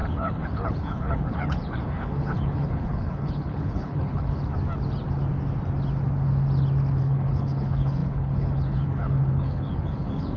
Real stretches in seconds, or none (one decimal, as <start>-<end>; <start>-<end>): 4.4-7.0